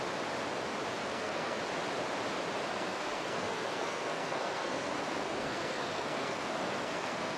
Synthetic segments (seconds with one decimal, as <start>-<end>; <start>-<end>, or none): 1.0-1.6; 2.7-7.4